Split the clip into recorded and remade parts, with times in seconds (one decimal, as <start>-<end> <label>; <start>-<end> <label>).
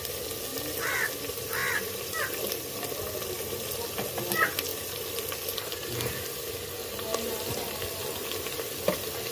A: 0.0-9.3 recorded